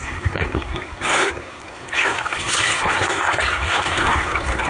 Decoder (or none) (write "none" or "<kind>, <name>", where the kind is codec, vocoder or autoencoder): codec, SNAC